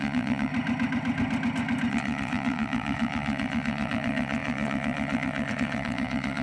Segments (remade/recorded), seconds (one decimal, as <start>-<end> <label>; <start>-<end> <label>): 0.0-0.5 remade; 0.5-1.9 recorded; 1.9-6.4 remade